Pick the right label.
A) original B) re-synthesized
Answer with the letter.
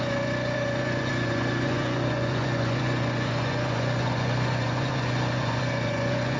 B